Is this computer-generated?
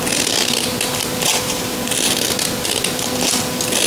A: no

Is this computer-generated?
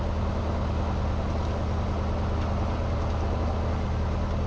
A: no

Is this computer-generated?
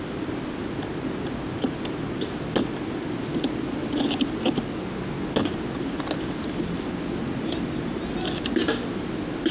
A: no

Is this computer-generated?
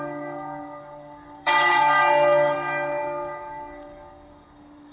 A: yes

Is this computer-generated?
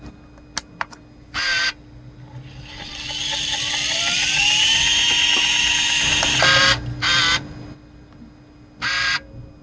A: no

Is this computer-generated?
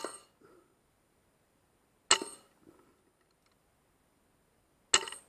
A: no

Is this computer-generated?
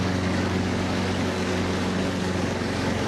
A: yes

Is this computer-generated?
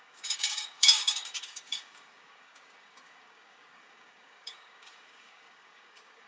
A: yes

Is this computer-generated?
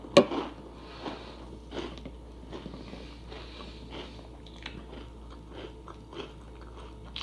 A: no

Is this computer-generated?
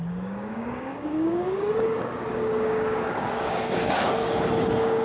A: yes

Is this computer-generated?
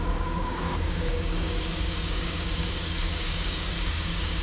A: yes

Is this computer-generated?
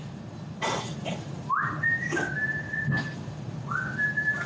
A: no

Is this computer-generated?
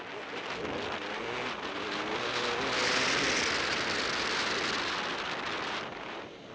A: no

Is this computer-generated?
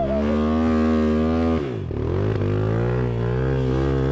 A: no